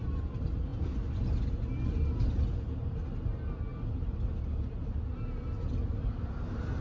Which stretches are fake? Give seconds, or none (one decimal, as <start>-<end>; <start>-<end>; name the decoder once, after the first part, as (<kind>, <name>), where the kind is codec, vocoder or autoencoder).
none